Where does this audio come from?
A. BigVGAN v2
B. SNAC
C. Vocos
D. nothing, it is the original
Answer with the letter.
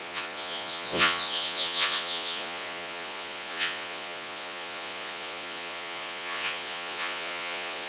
C